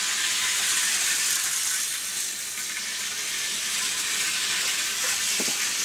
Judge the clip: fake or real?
real